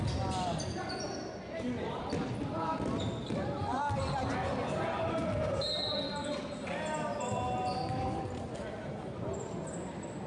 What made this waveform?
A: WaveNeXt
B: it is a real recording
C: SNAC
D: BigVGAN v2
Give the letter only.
B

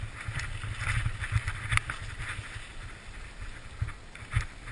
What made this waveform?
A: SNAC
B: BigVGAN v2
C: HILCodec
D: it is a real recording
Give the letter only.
D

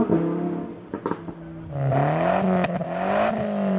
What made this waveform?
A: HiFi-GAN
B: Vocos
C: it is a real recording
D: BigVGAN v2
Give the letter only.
C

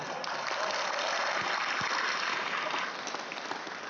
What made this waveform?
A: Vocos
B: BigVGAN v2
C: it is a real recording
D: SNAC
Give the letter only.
B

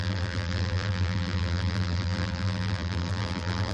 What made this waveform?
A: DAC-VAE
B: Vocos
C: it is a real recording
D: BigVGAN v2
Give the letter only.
D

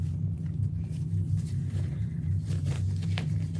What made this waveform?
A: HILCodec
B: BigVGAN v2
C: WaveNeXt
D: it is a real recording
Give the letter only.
B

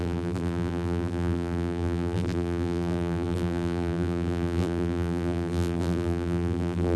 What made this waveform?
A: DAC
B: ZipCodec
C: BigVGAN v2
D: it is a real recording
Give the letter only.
C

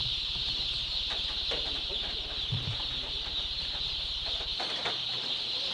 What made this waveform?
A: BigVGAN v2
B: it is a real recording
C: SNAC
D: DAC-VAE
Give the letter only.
A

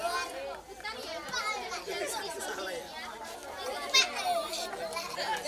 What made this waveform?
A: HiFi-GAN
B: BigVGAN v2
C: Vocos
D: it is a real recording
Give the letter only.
D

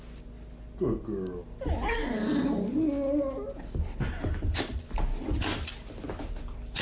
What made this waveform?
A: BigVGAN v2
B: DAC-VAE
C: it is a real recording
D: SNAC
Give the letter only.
C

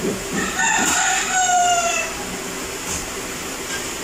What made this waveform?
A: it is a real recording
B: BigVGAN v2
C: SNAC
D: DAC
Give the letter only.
B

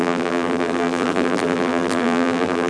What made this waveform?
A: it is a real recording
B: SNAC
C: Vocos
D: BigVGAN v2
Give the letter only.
D